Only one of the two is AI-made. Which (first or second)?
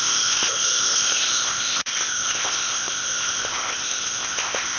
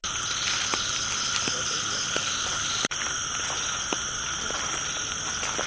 first